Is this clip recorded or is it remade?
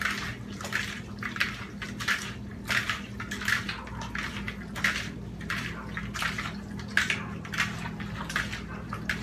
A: recorded